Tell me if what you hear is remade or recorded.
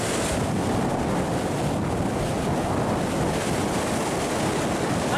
recorded